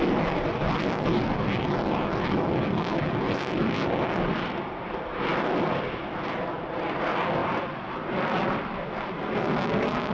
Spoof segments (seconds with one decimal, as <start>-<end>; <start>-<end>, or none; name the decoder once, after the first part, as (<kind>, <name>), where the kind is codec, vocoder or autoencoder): none

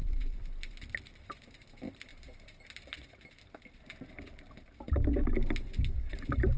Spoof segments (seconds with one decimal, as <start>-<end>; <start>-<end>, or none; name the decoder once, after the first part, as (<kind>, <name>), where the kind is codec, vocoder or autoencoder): 0.0-1.7 (vocoder, BigVGAN v2)

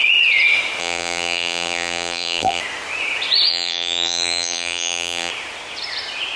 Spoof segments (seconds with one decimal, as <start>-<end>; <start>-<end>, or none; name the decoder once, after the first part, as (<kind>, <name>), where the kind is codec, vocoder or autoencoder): 0.8-2.6 (vocoder, BigVGAN v2); 3.5-5.3

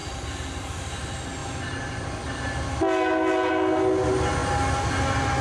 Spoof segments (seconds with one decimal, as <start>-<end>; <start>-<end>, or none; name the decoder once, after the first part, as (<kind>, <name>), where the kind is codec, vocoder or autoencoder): 0.0-0.6 (vocoder, BigVGAN v2)

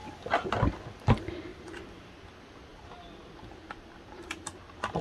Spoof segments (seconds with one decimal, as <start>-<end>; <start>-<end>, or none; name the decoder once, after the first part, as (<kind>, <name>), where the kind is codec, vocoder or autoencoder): 0.0-0.8 (vocoder, BigVGAN v2); 1.5-2.0; 2.7-5.0

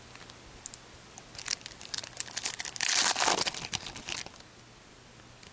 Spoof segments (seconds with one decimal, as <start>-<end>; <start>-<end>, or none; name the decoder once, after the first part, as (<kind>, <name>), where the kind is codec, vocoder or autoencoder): none